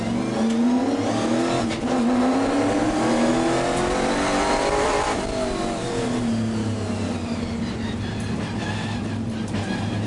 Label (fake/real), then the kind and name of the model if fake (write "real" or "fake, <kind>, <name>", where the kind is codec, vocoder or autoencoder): real